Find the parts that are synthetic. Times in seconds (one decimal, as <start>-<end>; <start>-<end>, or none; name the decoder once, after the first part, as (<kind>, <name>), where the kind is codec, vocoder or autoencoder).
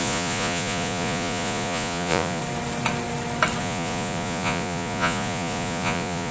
0.0-2.4 (vocoder, Vocos); 3.6-6.3